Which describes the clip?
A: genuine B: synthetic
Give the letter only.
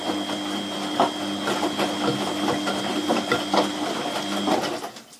A